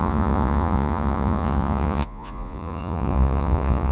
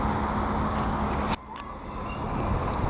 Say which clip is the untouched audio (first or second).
second